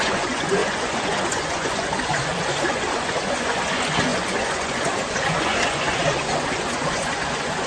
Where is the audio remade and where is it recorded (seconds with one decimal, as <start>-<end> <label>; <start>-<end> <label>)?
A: 0.0-7.7 remade